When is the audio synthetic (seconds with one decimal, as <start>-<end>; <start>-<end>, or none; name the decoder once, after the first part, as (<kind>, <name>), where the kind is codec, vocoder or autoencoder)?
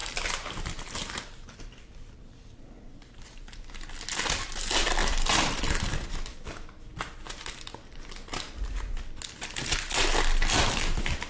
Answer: 0.0-3.7 (vocoder, BigVGAN v2); 5.0-5.8